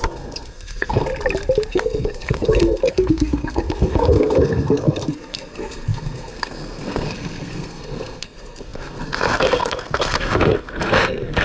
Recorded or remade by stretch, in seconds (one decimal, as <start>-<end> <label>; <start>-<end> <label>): 0.0-1.1 remade; 1.1-1.7 recorded; 1.7-11.4 remade